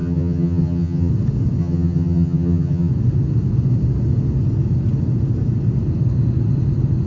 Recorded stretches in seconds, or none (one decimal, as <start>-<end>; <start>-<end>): 1.1-1.6; 2.9-7.1